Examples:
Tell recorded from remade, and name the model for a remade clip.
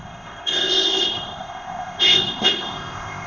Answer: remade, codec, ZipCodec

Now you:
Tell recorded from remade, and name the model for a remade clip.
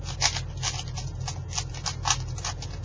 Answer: recorded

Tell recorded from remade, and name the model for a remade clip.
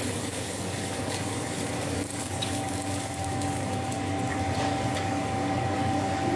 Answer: remade, codec, DAC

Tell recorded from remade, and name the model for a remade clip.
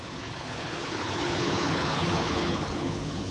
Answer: remade, codec, HILCodec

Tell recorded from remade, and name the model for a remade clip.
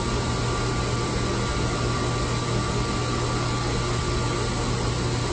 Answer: recorded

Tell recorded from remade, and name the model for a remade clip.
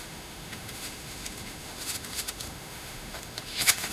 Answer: remade, autoencoder, DAC-VAE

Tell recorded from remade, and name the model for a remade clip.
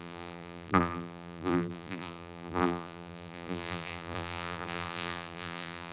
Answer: remade, vocoder, BigVGAN v2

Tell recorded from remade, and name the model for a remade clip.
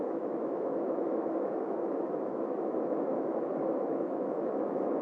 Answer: remade, autoencoder, DAC-VAE